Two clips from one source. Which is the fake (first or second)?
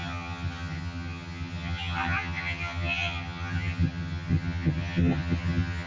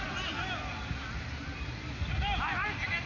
first